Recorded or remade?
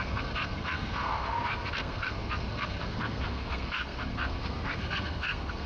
remade